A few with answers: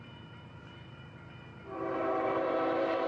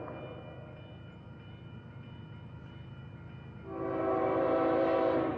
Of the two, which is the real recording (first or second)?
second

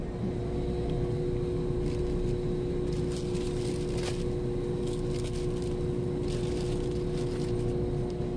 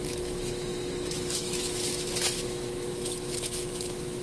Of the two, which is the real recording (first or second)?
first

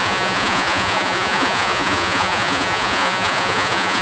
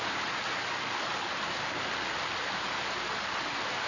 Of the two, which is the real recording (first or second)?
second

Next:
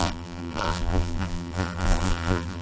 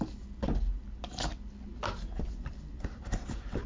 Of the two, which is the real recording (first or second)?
second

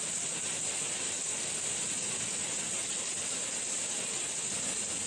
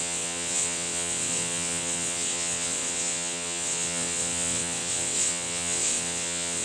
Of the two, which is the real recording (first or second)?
first